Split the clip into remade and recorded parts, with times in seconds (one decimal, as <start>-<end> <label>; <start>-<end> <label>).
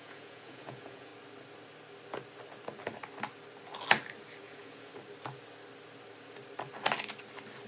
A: 0.0-1.1 remade; 1.1-4.4 recorded; 4.4-4.9 remade; 4.9-7.7 recorded